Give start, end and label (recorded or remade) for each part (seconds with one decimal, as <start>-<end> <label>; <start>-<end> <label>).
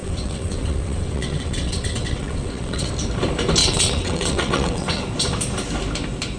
0.0-2.9 remade; 2.9-3.6 recorded; 3.6-5.0 remade; 5.0-6.4 recorded